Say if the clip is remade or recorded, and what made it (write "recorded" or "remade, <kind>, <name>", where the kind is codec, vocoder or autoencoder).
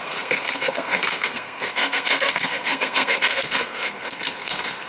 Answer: remade, codec, SNAC